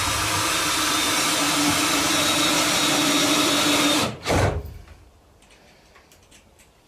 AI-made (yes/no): yes